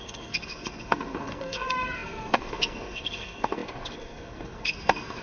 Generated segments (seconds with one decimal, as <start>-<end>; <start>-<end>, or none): 0.0-5.2